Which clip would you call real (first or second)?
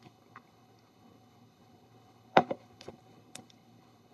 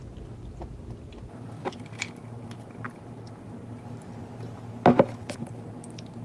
second